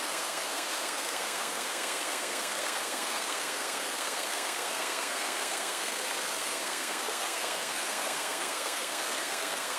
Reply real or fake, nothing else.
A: fake